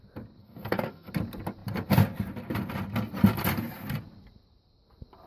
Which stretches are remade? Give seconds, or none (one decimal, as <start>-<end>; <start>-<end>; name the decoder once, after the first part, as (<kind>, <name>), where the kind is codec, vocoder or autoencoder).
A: 0.4-1.1 (codec, SNAC)